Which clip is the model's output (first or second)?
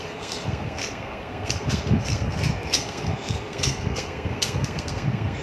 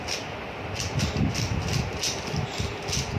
first